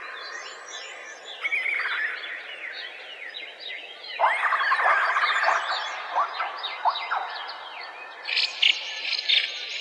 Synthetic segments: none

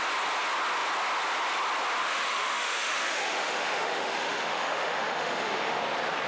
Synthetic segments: 2.0-5.8 (autoencoder, DAC-VAE)